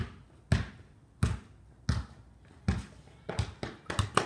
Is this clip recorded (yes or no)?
yes